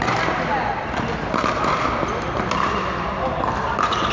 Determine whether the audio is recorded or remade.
recorded